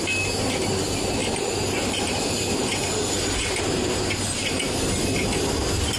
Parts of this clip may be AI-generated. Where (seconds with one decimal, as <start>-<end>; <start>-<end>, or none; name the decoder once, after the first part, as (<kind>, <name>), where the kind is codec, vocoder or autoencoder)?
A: 1.2-4.8 (vocoder, BigVGAN v2)